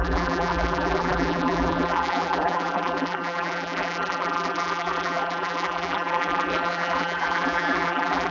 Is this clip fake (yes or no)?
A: yes